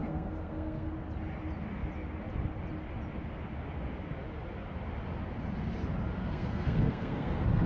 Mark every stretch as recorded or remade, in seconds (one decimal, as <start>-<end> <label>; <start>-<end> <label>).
0.0-0.9 remade; 0.9-6.2 recorded; 6.2-7.7 remade